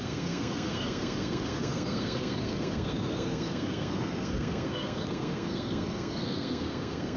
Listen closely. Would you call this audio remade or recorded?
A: remade